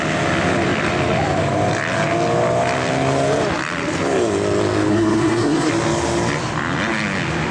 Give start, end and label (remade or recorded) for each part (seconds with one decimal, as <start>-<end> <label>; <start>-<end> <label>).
0.0-4.9 recorded; 4.9-5.7 remade; 5.7-7.5 recorded